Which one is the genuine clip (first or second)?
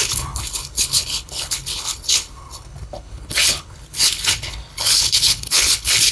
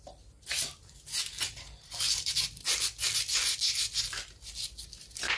second